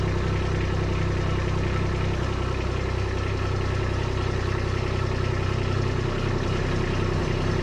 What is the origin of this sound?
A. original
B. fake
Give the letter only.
A